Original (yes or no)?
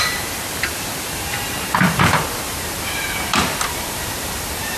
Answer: no